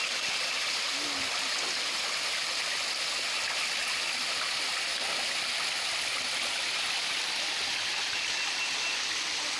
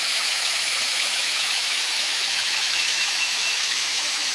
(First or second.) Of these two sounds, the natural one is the first